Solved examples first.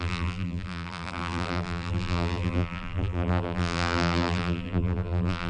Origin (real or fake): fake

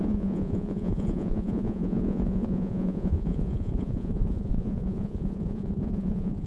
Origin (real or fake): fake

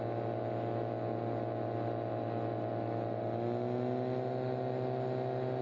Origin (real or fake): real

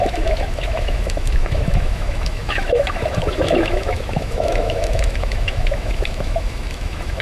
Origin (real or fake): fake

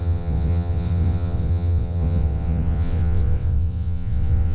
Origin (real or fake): fake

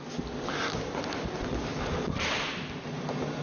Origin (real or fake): real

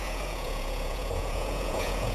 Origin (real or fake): fake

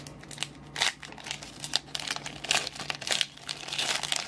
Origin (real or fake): real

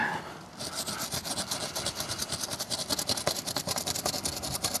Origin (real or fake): real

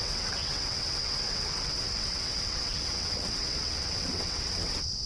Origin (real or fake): fake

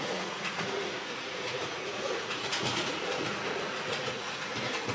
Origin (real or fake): fake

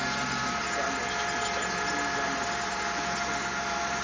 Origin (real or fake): real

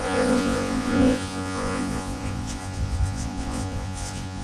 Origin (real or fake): fake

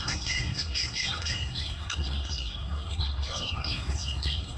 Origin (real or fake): fake